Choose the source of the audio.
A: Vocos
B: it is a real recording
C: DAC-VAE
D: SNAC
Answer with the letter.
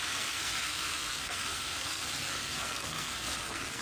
D